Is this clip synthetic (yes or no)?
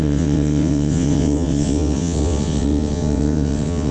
yes